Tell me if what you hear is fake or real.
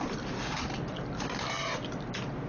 real